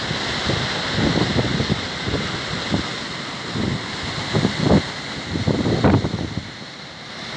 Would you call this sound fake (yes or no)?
yes